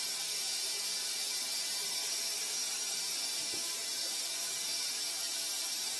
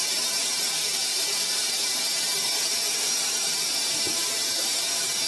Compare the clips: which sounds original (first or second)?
first